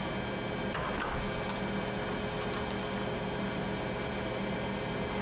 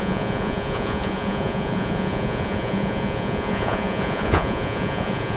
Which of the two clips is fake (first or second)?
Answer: second